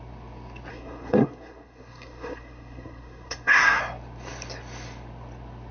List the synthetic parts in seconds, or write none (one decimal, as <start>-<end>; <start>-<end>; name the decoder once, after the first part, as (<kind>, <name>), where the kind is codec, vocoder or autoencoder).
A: 0.7-3.8 (codec, SNAC)